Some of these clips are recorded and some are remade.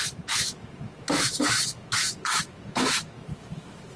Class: remade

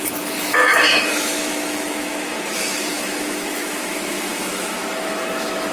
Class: remade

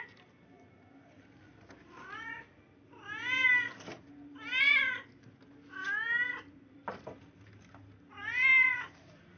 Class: recorded